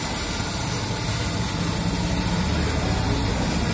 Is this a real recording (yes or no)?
yes